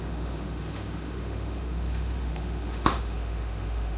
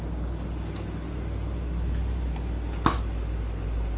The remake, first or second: first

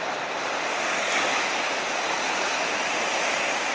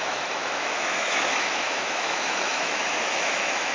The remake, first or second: second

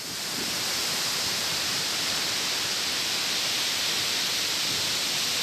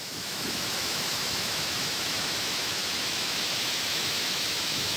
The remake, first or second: second